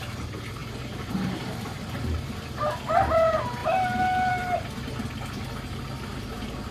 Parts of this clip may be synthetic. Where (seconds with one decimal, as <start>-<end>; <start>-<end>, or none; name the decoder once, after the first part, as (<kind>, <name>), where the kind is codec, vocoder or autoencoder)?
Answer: 0.6-2.0 (vocoder, BigVGAN v2); 3.6-4.3